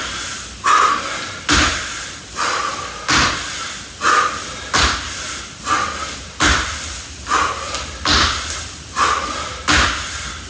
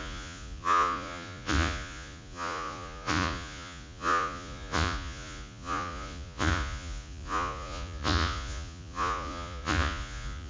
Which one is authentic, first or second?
first